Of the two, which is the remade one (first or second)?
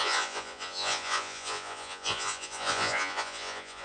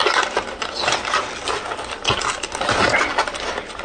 first